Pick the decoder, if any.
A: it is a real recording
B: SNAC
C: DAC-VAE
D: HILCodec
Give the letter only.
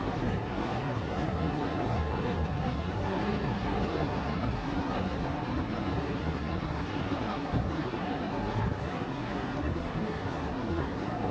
B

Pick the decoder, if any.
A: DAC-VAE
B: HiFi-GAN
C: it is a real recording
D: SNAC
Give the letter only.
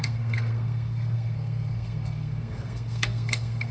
D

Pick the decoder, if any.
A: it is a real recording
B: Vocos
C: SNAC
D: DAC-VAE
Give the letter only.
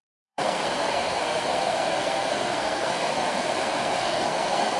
C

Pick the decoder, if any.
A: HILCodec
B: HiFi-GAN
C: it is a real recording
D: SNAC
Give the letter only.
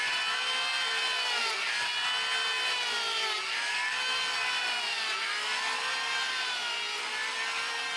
C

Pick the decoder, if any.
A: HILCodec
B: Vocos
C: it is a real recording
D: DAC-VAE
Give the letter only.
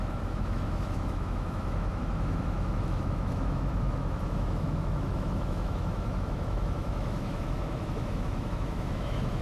D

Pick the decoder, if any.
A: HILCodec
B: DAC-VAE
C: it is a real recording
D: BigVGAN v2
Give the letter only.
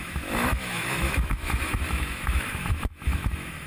B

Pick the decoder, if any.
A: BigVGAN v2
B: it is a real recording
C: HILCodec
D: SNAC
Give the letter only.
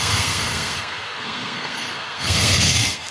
D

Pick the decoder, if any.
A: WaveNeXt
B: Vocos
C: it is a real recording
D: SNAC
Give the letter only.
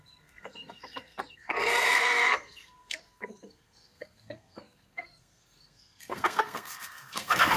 D